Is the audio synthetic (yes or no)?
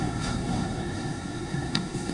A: yes